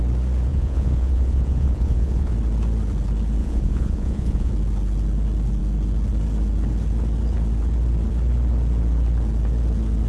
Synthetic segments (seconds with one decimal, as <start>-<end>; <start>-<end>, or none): 0.5-2.3; 3.4-4.5